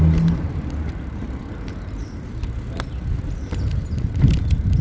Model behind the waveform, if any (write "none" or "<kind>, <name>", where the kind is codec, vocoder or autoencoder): none